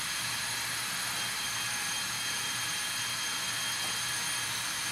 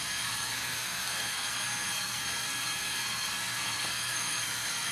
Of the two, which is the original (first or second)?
first